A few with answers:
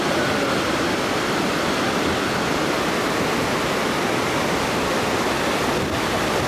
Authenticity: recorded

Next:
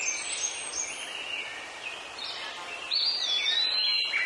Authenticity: recorded